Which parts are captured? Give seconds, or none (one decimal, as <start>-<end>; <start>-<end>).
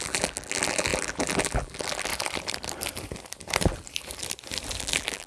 2.1-4.8